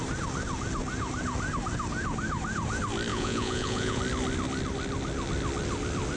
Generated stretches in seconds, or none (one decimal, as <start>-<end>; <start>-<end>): 3.1-4.0